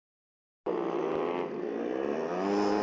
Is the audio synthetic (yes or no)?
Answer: no